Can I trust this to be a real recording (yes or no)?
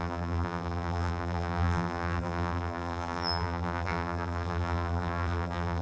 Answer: no